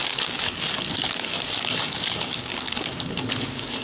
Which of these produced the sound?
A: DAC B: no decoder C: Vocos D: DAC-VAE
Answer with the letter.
A